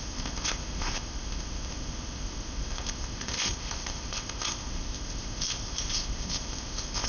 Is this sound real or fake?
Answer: fake